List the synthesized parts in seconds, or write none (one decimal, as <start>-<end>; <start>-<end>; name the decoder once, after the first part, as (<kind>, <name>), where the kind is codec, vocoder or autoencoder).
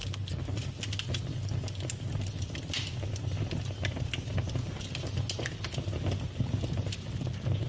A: none